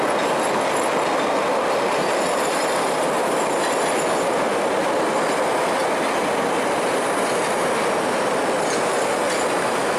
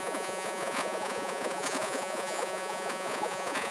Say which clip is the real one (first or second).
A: first